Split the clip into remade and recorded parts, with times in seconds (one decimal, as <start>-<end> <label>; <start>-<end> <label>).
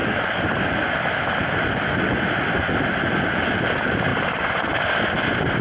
0.0-4.1 recorded; 4.1-4.6 remade; 4.6-5.6 recorded